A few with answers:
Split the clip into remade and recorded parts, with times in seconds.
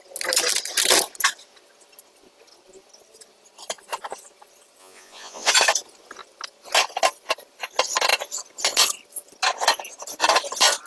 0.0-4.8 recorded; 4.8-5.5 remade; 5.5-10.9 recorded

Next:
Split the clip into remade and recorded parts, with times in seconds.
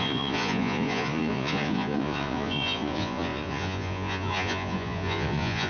0.0-5.7 remade